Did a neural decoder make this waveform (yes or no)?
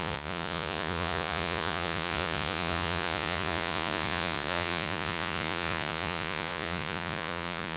yes